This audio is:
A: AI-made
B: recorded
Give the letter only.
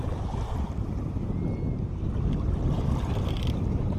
B